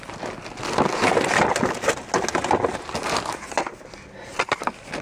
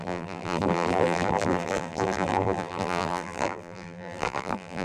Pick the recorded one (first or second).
first